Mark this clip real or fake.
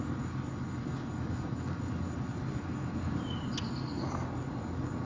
real